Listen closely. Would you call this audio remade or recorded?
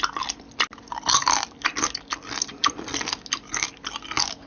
recorded